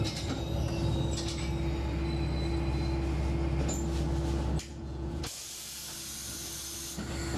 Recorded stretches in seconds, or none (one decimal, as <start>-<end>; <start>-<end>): 0.0-4.7; 5.2-7.4